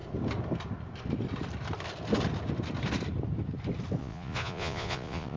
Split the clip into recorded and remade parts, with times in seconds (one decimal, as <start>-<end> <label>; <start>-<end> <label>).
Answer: 0.0-4.0 recorded; 4.0-5.4 remade